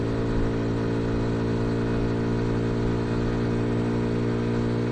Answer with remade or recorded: recorded